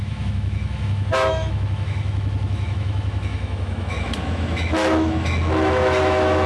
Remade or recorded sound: remade